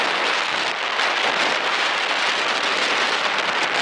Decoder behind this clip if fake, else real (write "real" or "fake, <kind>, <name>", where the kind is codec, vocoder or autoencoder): real